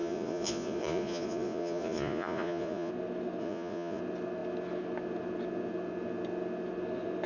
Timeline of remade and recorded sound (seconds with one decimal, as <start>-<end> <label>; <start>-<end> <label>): 0.0-2.9 remade; 2.9-3.4 recorded; 3.4-4.0 remade; 4.0-7.3 recorded